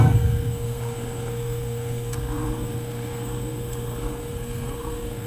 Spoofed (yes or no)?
yes